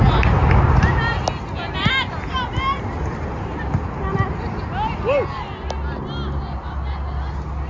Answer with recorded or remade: recorded